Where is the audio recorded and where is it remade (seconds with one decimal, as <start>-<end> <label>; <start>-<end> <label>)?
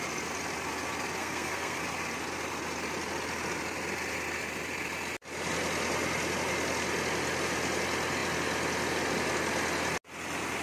0.0-1.2 recorded; 1.2-1.8 remade; 1.8-10.6 recorded